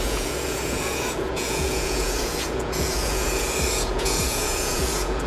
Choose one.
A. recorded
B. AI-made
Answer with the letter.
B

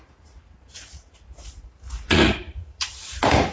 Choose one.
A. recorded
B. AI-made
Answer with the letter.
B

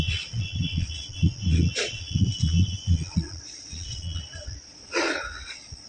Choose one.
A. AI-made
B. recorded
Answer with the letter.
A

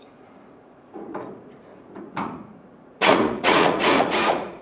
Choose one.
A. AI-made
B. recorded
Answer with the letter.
A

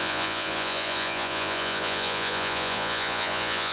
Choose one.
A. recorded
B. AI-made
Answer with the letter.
B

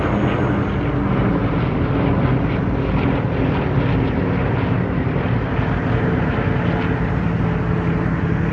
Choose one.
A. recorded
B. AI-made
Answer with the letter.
A